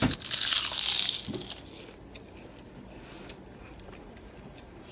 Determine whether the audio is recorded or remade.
recorded